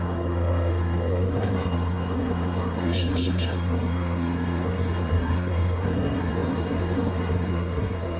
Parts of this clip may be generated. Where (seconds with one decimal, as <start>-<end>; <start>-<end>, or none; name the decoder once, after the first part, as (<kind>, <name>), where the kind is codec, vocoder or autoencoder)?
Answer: 0.0-8.2 (codec, SNAC)